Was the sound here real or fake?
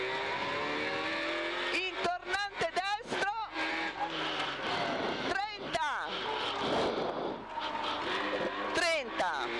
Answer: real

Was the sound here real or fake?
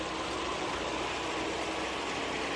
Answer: real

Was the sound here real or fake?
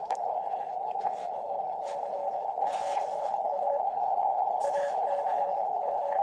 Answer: fake